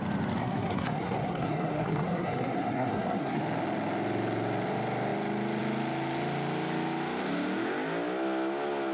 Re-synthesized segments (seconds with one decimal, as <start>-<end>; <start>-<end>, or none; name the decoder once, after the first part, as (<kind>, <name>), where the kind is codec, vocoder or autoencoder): 0.4-3.4 (codec, SNAC)